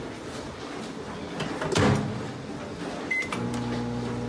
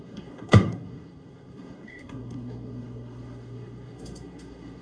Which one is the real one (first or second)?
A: first